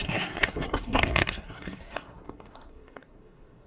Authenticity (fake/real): fake